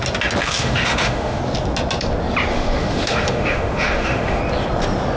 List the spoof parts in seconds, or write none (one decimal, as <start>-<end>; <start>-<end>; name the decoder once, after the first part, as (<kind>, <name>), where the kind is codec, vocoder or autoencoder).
0.4-1.4 (autoencoder, DAC-VAE); 2.5-4.4